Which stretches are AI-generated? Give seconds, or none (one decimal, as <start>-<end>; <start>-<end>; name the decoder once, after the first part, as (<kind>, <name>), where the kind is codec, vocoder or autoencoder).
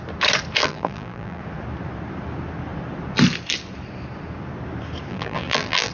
0.6-1.4 (vocoder, BigVGAN v2); 5.1-5.9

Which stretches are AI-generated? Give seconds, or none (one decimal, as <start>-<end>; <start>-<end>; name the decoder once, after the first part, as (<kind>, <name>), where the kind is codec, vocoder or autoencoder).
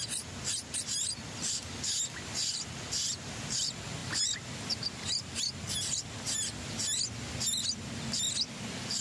none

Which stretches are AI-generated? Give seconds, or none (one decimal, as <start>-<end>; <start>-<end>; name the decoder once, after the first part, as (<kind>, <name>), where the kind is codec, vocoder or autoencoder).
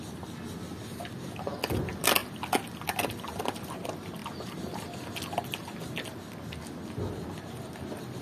none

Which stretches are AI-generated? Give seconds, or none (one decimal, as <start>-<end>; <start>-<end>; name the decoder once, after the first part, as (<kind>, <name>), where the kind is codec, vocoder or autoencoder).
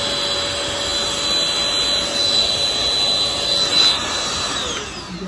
none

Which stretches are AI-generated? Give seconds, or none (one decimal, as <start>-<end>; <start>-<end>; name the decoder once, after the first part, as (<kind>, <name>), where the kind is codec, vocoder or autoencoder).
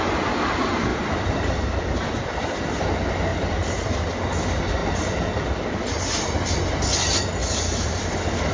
0.9-1.9 (vocoder, BigVGAN v2); 3.3-4.1; 7.4-8.0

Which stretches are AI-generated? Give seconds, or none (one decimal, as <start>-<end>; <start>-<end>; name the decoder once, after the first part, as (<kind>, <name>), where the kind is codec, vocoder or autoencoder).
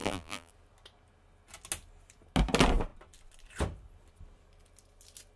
0.0-0.5 (vocoder, BigVGAN v2)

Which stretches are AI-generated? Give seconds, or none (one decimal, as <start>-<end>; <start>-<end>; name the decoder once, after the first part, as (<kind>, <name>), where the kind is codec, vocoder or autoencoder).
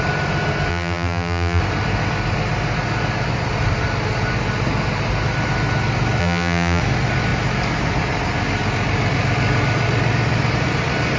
0.7-1.6 (vocoder, BigVGAN v2); 6.2-6.8